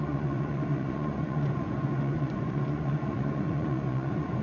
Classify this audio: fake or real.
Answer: fake